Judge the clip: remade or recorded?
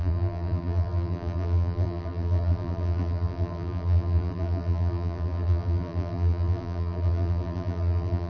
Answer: remade